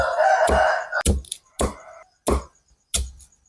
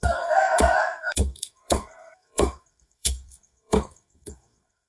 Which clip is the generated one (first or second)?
second